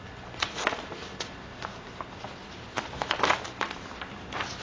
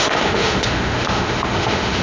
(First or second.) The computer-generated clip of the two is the second